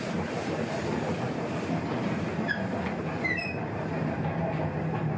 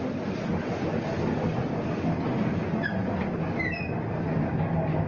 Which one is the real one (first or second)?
second